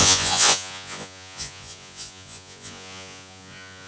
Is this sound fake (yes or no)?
yes